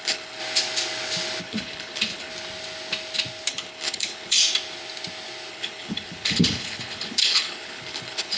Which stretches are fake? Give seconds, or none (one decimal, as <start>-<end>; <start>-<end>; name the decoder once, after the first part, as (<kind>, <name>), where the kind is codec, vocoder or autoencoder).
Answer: 0.0-0.4 (codec, HILCodec); 1.4-2.3; 3.5-4.4; 5.5-8.4